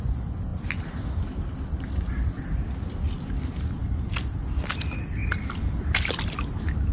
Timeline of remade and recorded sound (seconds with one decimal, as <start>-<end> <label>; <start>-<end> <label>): 0.0-0.5 recorded; 0.5-3.1 remade; 3.1-6.9 recorded